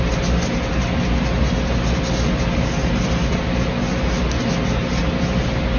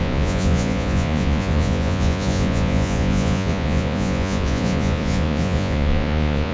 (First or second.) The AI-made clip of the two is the second